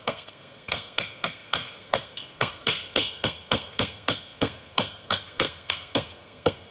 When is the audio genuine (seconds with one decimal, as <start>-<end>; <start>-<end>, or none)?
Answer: none